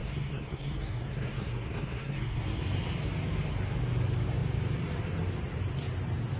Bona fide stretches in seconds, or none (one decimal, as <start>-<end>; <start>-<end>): 2.6-6.4